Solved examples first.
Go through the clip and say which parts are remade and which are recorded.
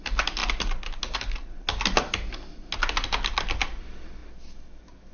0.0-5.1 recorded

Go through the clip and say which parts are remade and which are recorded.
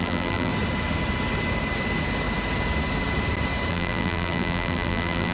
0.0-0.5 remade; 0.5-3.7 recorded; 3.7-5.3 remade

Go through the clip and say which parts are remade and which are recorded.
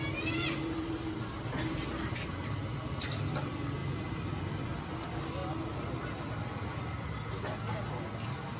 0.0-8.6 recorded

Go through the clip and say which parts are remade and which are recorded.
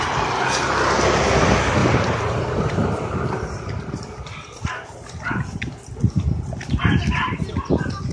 0.0-1.8 recorded; 1.8-5.6 remade; 5.6-8.1 recorded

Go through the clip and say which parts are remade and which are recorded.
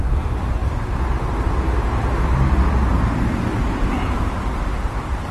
0.0-0.6 remade; 0.6-2.9 recorded; 2.9-5.3 remade